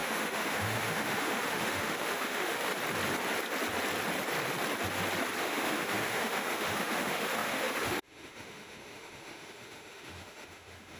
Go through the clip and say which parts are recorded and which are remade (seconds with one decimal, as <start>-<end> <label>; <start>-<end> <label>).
0.0-2.7 remade; 2.7-5.4 recorded; 5.4-11.0 remade